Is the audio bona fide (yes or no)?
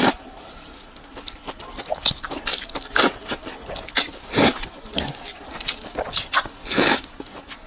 yes